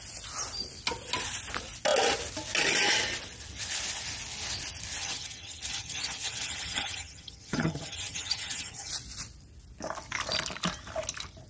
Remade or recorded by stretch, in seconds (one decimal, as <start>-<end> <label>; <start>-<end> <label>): 0.0-5.0 recorded; 5.0-8.9 remade; 8.9-11.5 recorded